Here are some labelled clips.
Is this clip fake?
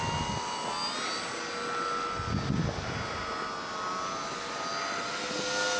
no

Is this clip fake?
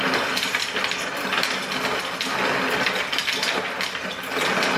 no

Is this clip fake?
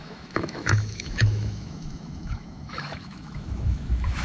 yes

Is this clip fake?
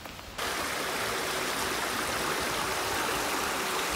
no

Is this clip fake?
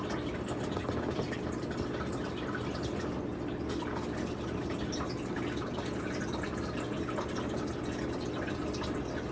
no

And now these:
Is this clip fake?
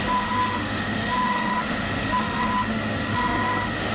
yes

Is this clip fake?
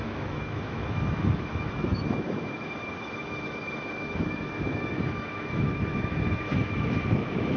yes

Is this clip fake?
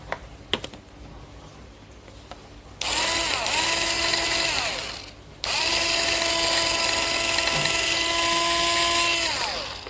no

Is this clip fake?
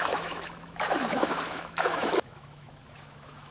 yes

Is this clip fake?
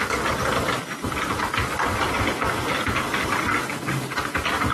no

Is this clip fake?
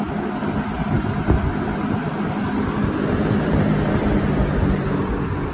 no